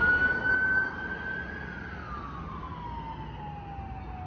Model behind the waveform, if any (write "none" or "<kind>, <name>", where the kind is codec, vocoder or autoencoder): none